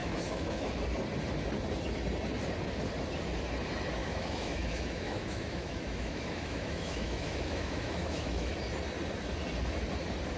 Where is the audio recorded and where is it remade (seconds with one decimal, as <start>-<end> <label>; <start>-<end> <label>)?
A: 0.0-0.8 remade; 0.8-4.0 recorded; 4.0-8.5 remade; 8.5-10.4 recorded